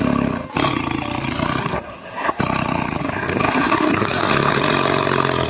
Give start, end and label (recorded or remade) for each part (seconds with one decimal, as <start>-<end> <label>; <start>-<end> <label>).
0.0-1.6 recorded; 1.6-2.4 remade; 2.4-3.0 recorded; 3.0-4.3 remade; 4.3-5.5 recorded